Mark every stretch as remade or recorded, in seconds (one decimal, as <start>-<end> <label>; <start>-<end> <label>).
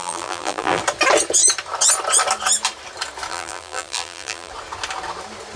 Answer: 0.0-0.8 remade; 0.8-3.3 recorded; 3.3-4.5 remade; 4.5-5.6 recorded